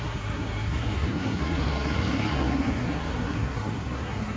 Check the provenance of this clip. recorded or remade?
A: remade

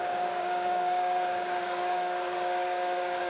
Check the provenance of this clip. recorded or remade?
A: remade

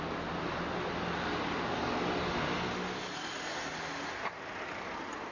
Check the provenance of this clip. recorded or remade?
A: recorded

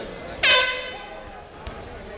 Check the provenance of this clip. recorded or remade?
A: recorded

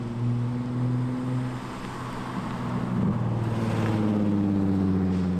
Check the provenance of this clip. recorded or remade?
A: recorded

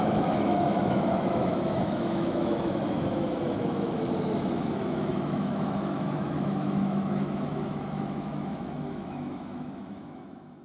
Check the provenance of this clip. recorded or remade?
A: remade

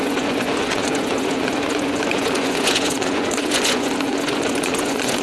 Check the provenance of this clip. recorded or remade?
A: remade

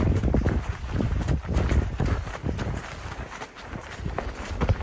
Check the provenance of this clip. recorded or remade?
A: recorded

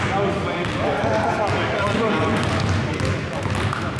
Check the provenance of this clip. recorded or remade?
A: recorded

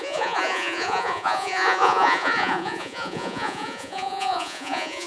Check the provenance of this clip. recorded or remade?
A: remade